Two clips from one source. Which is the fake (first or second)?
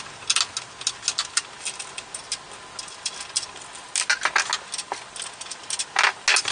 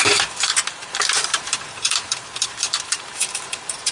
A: second